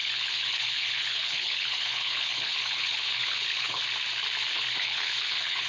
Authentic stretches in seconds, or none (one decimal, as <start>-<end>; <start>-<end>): 3.8-4.5